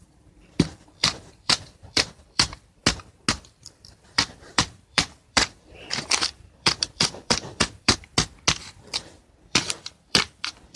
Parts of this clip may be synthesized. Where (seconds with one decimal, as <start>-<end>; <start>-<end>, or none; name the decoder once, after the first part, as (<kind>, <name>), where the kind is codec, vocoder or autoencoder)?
0.0-2.8 (vocoder, BigVGAN v2); 3.3-8.1; 8.9-10.8